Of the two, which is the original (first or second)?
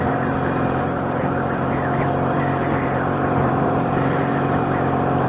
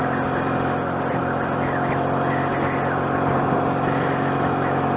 second